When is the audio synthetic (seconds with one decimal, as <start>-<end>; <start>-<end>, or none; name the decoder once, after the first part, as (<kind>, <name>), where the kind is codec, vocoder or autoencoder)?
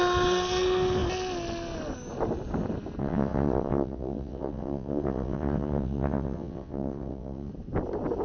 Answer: 3.0-7.5 (vocoder, WaveNeXt)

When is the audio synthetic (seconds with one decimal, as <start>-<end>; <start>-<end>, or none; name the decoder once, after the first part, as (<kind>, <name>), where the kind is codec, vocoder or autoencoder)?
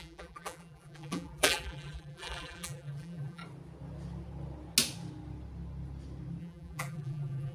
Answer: 0.0-3.4 (vocoder, BigVGAN v2); 6.4-7.5